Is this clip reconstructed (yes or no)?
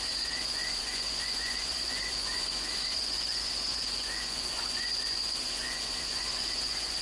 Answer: yes